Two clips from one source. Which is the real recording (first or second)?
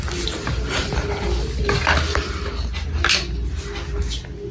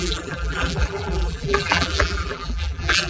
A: first